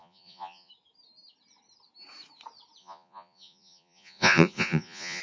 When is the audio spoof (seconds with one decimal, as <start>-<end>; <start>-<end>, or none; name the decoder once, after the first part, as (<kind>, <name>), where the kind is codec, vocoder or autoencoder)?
0.0-0.7 (vocoder, Vocos); 2.8-5.2